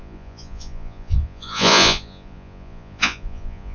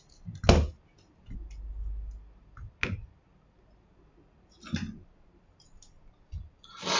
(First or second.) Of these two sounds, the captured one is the second